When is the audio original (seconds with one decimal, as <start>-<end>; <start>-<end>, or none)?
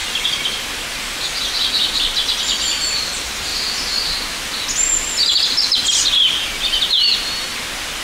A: 0.0-8.0